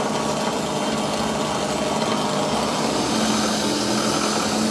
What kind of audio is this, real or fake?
real